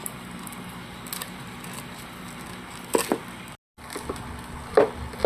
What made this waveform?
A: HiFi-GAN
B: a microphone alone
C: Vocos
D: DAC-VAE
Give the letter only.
B